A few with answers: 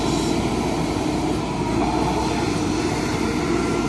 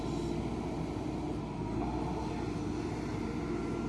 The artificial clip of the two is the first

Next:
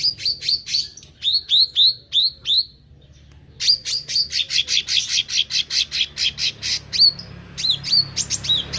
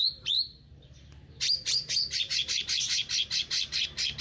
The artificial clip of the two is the second